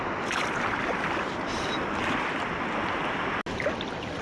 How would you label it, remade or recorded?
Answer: recorded